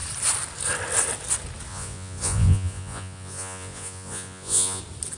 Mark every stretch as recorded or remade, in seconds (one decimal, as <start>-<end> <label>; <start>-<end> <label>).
0.0-1.7 recorded; 1.7-4.8 remade; 4.8-5.2 recorded